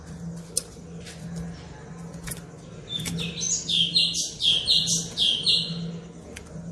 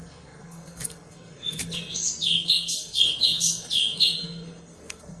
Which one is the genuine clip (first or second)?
first